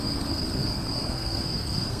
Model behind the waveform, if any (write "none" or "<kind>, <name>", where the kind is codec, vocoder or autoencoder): codec, SNAC